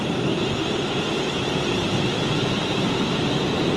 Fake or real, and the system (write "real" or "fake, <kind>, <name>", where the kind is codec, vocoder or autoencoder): fake, vocoder, BigVGAN v2